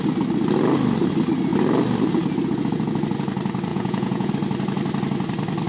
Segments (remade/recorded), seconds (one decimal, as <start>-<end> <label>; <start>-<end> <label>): 0.0-3.7 recorded; 3.7-4.3 remade; 4.3-5.7 recorded